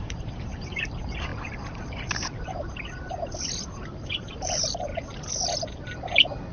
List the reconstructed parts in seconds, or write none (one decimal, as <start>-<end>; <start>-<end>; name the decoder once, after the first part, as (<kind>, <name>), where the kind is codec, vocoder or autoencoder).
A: 0.0-1.3 (vocoder, BigVGAN v2); 3.4-4.9